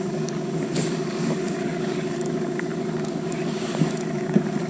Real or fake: fake